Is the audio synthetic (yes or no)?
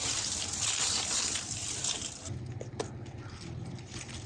no